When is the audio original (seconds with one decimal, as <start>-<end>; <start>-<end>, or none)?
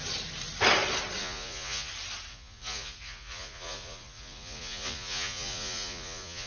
0.0-1.2; 1.9-2.3